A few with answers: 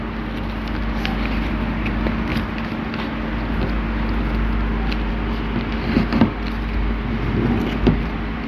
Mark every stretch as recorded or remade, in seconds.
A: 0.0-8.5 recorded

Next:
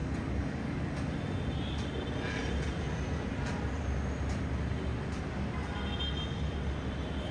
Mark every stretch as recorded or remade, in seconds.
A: 0.0-1.1 remade; 1.1-7.3 recorded

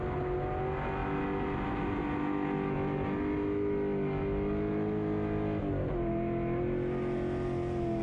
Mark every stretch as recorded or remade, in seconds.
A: 0.0-8.0 recorded